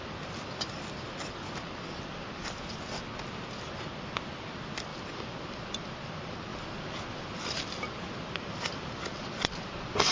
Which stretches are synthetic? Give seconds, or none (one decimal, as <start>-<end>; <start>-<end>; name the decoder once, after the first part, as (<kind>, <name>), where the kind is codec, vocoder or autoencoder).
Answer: 4.9-5.9 (vocoder, BigVGAN v2); 6.5-10.1

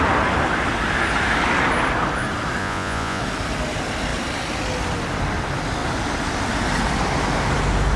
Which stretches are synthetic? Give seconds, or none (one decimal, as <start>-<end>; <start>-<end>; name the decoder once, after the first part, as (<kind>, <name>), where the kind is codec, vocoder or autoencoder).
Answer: 2.6-3.2 (vocoder, Vocos)

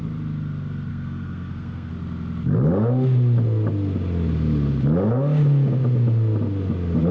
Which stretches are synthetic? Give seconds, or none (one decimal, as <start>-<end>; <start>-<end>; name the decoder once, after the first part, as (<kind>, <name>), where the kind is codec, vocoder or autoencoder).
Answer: 0.9-1.9 (codec, SNAC)

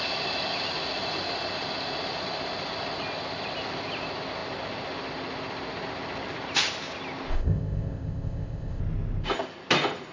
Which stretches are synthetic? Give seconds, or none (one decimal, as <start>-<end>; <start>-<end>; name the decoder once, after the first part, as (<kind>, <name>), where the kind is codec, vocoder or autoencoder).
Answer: 7.3-8.8 (codec, ZipCodec)

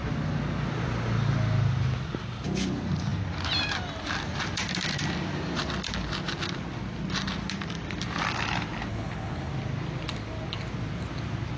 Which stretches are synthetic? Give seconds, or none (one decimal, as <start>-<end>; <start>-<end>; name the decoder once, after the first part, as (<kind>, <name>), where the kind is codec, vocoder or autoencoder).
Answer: 8.9-9.5 (codec, HILCodec)